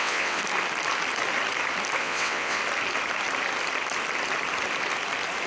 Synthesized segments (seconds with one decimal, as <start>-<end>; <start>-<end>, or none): 0.0-0.4; 2.0-2.6